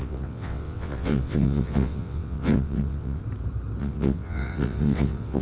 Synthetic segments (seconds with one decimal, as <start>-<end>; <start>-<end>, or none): 0.0-3.2; 3.8-5.4